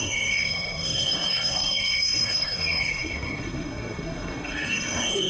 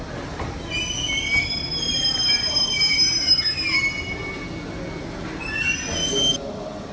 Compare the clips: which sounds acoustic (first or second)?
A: second